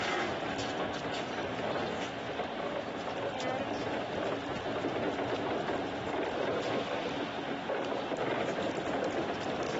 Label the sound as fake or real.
real